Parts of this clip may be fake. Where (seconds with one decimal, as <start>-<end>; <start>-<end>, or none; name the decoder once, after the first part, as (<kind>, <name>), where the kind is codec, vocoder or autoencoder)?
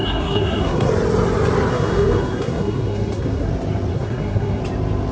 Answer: 0.0-0.9 (codec, SNAC); 1.7-3.5; 3.9-4.6